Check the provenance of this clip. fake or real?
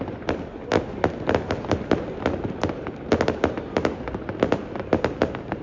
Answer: real